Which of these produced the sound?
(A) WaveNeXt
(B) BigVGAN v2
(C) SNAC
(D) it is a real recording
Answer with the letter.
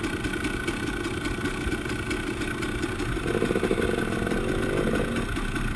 D